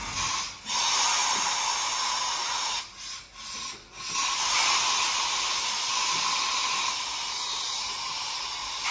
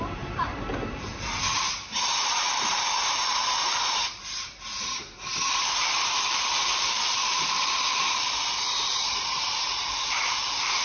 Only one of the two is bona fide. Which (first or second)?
first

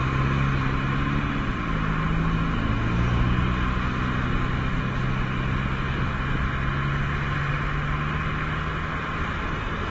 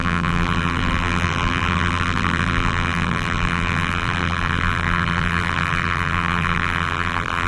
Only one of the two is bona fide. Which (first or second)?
first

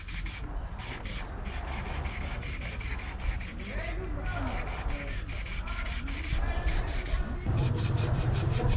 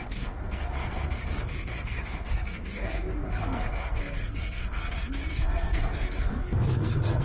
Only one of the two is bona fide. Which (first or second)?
first